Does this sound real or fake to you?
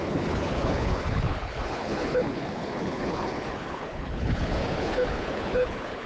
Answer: fake